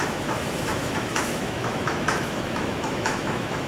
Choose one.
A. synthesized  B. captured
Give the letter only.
A